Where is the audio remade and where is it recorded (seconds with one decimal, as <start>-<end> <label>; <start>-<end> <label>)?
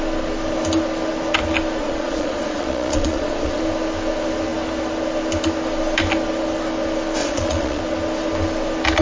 0.0-1.8 recorded; 1.8-3.6 remade; 3.6-7.2 recorded; 7.2-7.8 remade; 7.8-9.0 recorded